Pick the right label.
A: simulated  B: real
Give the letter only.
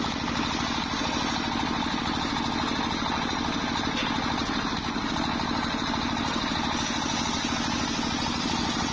B